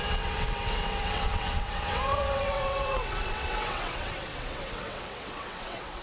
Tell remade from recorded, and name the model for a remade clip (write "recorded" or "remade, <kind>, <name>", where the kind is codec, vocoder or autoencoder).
remade, vocoder, WaveNeXt